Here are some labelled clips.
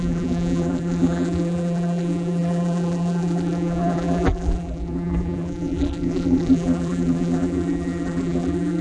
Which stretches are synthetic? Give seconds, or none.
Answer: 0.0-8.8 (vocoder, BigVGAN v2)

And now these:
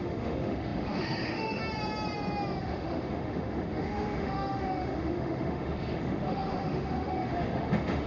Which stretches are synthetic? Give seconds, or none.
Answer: 0.0-1.6 (autoencoder, DAC-VAE); 2.6-8.1

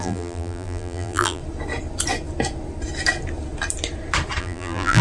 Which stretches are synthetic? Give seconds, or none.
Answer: 0.0-1.4 (vocoder, BigVGAN v2); 4.4-5.0

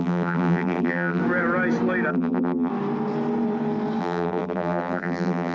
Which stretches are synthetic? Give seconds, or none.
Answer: 0.0-1.2 (vocoder, BigVGAN v2); 2.1-2.7; 4.0-5.5

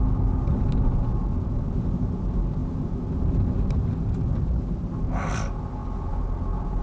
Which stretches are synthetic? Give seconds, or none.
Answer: none